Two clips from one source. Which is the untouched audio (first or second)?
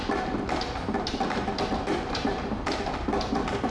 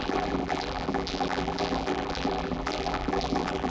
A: first